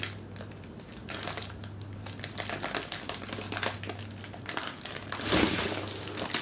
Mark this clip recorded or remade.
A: recorded